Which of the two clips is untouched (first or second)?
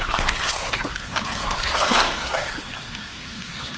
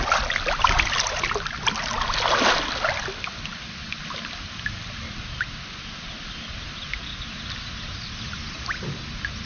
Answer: second